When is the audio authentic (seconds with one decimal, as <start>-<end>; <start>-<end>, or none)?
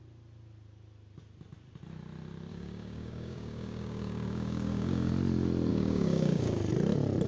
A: 0.0-2.5; 5.1-5.7; 6.6-7.3